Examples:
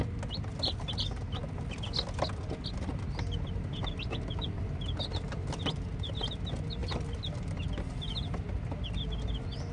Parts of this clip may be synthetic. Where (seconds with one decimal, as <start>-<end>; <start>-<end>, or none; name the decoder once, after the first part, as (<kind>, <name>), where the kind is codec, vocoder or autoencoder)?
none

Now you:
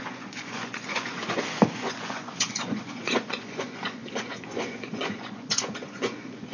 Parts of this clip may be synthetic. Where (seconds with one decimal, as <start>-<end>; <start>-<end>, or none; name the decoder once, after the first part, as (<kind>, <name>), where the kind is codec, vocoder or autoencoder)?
0.0-6.5 (vocoder, Vocos)

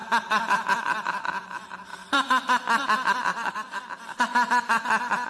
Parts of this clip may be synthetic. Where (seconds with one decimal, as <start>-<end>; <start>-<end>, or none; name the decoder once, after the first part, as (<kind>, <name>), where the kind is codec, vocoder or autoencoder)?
3.3-3.8 (vocoder, Vocos)

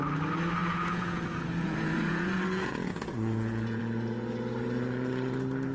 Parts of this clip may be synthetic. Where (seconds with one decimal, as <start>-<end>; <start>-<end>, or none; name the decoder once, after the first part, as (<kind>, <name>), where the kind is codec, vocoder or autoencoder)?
0.6-3.8 (vocoder, Vocos)

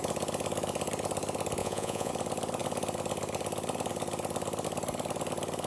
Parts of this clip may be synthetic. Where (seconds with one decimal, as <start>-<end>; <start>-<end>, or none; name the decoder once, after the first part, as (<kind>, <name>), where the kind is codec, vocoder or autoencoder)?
1.6-2.1 (vocoder, Vocos)

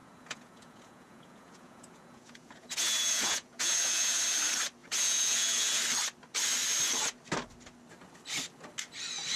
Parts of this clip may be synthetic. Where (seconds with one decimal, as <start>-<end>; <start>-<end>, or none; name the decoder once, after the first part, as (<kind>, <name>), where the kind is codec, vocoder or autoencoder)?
0.0-4.2 (vocoder, Vocos); 4.8-5.8

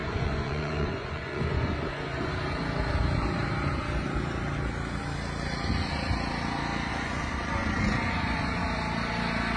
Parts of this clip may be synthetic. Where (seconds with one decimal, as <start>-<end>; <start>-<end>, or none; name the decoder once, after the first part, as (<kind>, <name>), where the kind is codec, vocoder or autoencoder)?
0.0-2.3 (vocoder, Vocos); 6.9-8.6

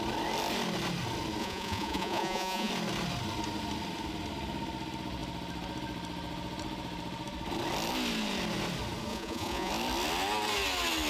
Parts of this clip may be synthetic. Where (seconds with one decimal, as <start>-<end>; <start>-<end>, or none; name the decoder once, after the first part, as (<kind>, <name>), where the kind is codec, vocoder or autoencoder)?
1.4-2.7 (vocoder, Vocos); 9.1-9.7